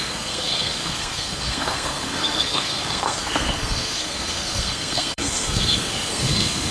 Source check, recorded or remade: remade